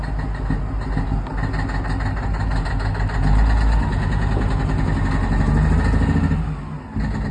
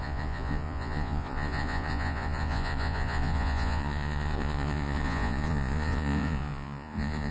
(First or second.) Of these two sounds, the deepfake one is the second